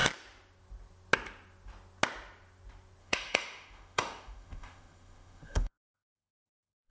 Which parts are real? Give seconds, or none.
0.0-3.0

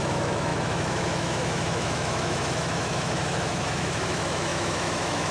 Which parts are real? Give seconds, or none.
none

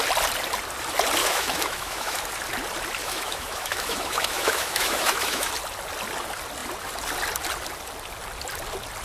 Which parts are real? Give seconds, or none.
0.0-1.2; 2.2-3.0; 5.5-9.0